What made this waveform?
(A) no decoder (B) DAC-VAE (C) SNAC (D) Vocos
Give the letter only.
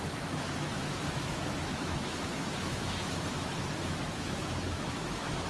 B